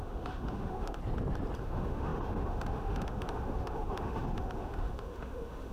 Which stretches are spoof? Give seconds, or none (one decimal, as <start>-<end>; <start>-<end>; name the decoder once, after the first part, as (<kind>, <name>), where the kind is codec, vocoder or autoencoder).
0.0-1.0 (autoencoder, DAC-VAE); 1.6-5.7